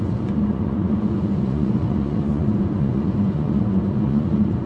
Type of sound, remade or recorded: remade